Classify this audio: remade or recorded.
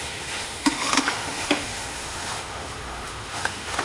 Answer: remade